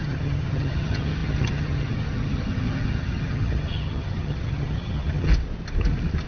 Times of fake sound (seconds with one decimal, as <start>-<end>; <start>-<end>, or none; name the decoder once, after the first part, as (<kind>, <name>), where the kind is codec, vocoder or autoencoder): 0.0-5.3 (vocoder, HiFi-GAN)